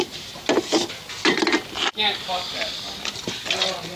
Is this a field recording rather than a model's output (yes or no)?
yes